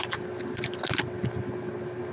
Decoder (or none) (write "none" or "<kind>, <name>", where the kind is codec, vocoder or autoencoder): none